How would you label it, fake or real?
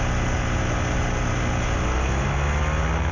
real